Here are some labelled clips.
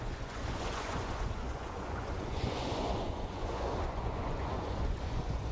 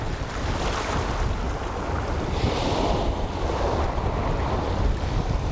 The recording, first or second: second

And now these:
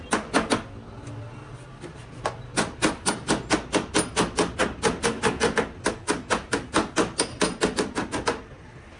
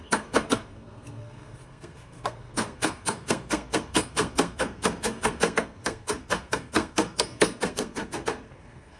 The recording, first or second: first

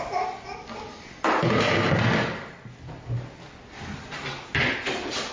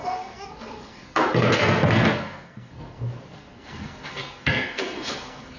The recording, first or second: first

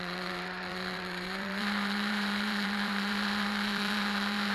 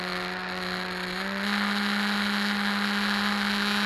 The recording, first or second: second